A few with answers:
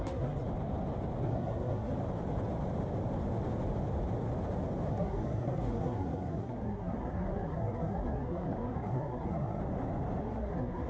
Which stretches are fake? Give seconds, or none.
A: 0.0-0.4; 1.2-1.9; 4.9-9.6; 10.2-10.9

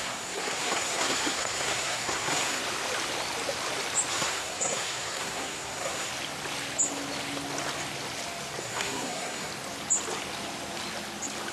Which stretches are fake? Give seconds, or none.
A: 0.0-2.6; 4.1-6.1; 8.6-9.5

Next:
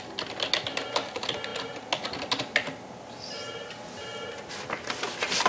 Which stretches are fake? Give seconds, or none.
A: none

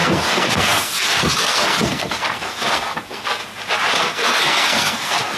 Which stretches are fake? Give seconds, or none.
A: 0.0-3.4; 4.0-5.4

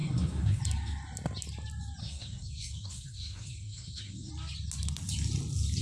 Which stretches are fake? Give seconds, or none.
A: 0.0-0.6; 2.0-4.3